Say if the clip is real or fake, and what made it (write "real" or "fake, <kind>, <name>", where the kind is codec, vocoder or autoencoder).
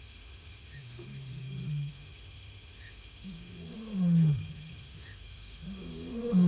fake, autoencoder, DAC-VAE